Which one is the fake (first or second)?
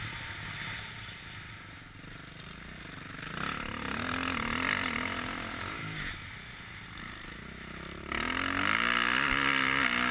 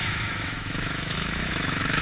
second